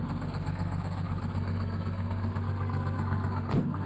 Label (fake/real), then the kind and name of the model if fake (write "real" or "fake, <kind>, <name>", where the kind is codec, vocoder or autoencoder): fake, codec, SNAC